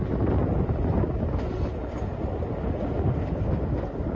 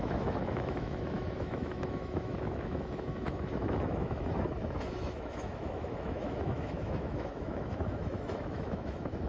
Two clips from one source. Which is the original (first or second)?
first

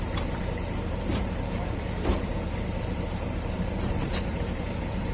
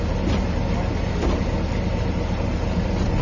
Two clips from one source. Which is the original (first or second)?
second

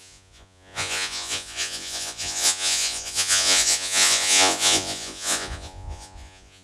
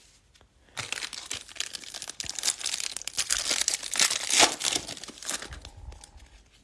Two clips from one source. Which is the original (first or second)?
second